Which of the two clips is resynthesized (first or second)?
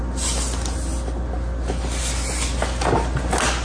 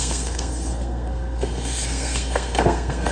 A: second